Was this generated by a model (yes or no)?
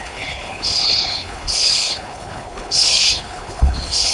yes